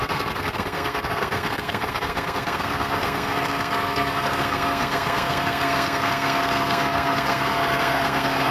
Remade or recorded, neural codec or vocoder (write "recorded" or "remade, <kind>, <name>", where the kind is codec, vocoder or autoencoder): remade, codec, SNAC